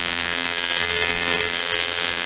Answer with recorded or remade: remade